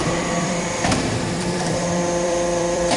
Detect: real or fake fake